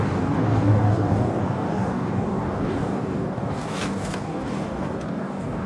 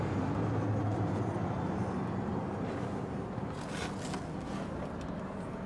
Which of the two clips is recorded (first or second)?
second